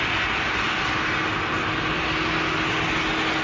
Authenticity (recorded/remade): recorded